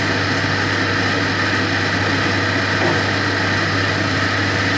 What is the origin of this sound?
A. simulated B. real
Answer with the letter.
B